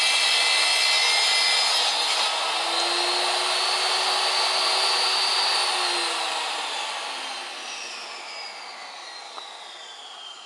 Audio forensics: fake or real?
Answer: real